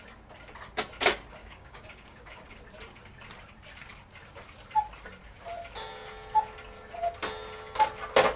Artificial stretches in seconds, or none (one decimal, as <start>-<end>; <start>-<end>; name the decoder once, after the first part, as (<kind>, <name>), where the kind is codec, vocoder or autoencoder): 1.4-2.6 (codec, DAC)